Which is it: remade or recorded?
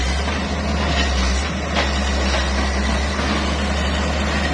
recorded